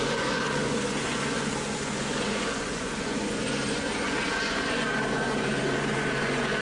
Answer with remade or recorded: remade